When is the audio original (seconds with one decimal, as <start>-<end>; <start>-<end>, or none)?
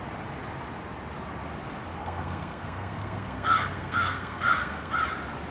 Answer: 0.0-2.0; 4.9-5.5